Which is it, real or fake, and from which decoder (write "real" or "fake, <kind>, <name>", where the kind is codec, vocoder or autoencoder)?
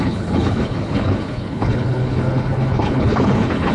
fake, codec, HILCodec